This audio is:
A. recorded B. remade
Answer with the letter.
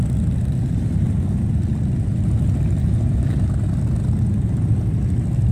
A